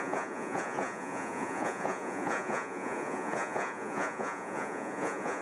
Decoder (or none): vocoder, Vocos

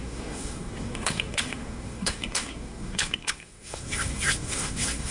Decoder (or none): codec, SNAC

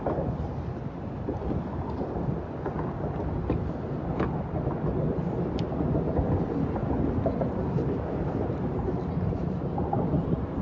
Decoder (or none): none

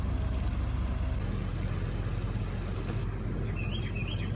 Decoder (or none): none